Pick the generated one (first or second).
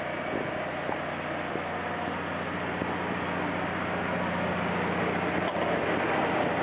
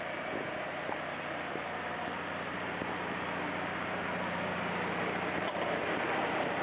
second